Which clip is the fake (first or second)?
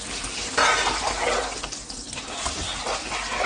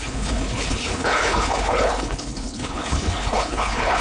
second